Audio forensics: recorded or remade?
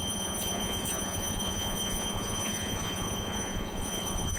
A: remade